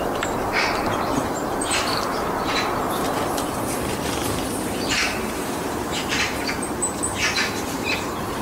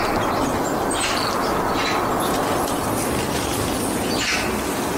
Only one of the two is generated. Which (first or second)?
first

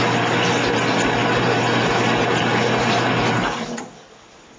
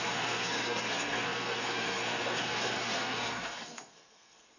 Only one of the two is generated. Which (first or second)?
second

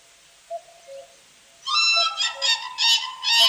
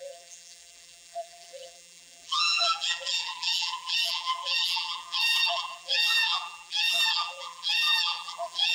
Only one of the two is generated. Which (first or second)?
second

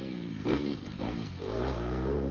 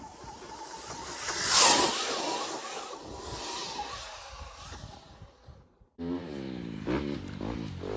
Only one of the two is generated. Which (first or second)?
first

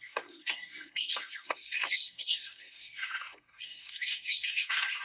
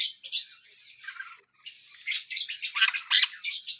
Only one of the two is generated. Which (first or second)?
first